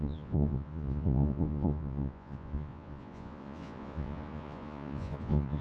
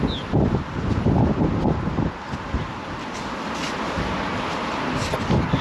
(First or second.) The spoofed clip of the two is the first